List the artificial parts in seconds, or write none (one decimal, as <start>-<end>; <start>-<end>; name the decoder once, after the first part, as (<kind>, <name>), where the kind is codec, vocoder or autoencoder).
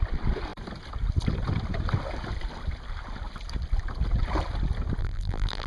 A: 5.0-5.7 (vocoder, BigVGAN v2)